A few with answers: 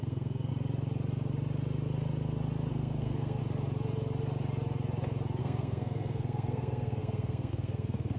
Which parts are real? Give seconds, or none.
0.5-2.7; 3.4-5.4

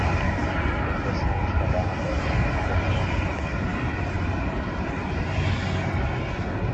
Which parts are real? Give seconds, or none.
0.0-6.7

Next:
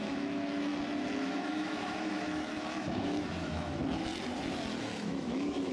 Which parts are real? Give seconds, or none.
0.7-1.2; 4.1-4.8

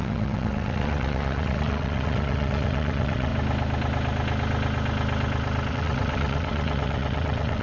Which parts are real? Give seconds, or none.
3.3-5.7